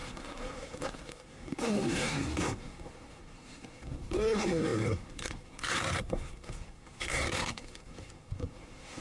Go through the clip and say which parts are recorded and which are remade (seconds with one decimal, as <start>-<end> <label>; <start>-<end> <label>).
0.0-9.0 remade